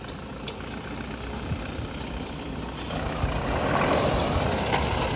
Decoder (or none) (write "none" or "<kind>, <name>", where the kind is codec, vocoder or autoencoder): none